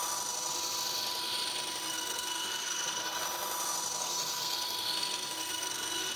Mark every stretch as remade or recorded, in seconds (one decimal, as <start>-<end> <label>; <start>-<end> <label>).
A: 0.0-1.9 recorded; 1.9-3.2 remade; 3.2-4.0 recorded; 4.0-6.2 remade